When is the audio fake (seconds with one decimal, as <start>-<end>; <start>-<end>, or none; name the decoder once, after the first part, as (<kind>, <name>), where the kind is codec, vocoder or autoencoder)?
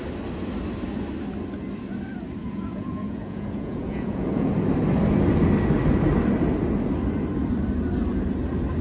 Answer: 2.4-4.5 (vocoder, Vocos)